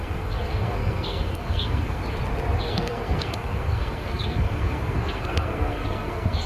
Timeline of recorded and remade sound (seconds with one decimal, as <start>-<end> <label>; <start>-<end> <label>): 0.0-2.0 remade; 2.0-2.6 recorded; 2.6-6.5 remade